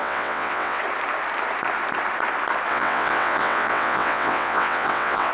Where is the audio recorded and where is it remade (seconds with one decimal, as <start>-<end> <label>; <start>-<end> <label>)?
0.0-0.8 remade; 0.8-2.7 recorded; 2.7-5.3 remade